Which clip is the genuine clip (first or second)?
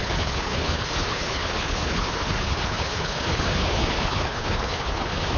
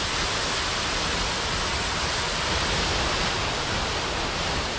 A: second